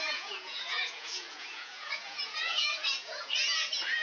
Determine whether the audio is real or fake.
fake